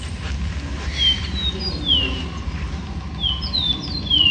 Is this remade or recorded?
recorded